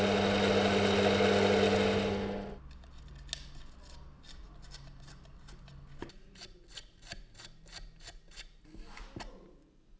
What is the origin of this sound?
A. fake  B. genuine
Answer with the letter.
B